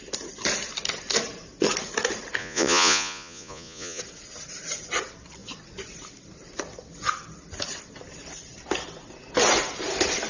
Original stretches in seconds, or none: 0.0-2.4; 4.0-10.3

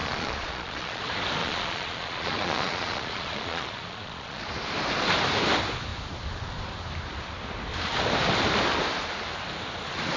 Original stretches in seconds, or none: 1.0-1.4; 4.4-10.2

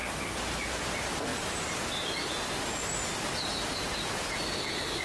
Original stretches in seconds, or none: 0.0-5.0

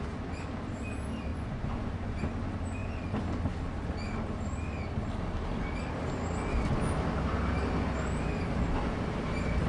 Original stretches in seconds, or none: 0.0-1.3; 2.2-9.7

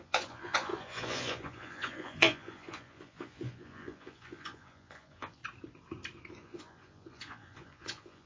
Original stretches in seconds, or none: 5.4-6.3

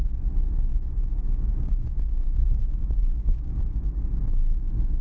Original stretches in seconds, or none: 0.0-0.7; 3.6-5.0